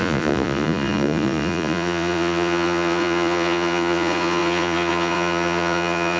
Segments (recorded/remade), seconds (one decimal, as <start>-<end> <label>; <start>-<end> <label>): 0.0-6.2 remade